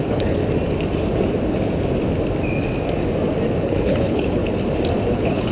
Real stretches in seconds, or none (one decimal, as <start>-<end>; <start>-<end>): 0.4-3.6; 4.4-5.1